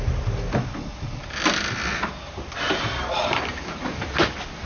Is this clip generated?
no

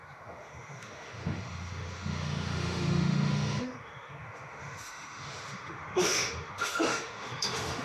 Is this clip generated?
yes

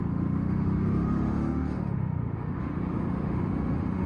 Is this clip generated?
yes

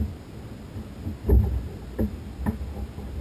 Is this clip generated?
no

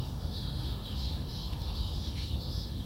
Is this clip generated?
yes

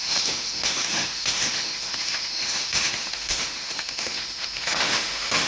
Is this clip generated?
yes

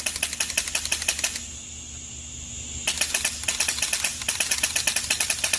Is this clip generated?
no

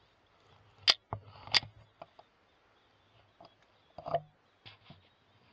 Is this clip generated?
no